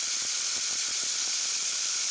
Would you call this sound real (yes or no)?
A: yes